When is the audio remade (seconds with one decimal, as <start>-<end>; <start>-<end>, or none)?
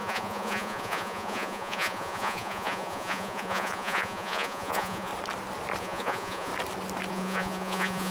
0.0-5.1; 5.8-6.5; 7.1-8.1